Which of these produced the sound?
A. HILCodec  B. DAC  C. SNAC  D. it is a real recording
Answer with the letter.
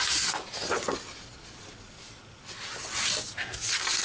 D